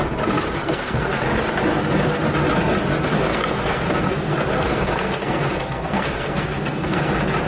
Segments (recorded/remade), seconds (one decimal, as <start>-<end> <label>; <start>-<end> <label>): 0.0-0.6 recorded; 0.6-1.1 remade; 1.1-3.1 recorded; 3.1-7.1 remade; 7.1-7.5 recorded